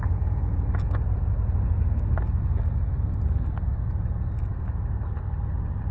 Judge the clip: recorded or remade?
recorded